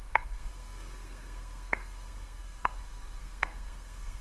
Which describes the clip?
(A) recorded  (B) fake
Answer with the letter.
B